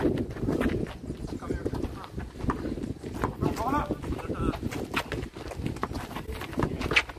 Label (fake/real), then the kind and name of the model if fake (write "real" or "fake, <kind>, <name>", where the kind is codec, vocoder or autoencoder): real